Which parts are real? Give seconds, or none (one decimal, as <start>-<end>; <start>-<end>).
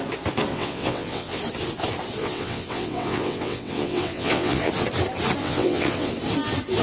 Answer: 0.0-0.5; 1.4-2.2; 4.7-5.4; 6.1-6.8